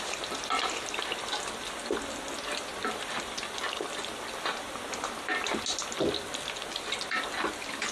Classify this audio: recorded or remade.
recorded